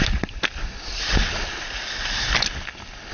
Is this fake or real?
real